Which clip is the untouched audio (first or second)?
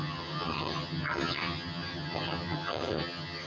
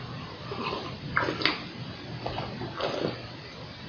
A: second